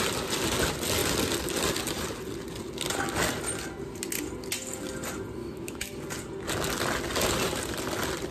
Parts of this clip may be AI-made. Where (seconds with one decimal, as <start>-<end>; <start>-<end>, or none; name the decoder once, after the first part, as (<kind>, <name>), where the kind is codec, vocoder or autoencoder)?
5.4-5.9 (autoencoder, DAC-VAE)